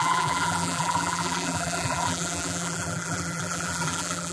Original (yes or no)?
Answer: no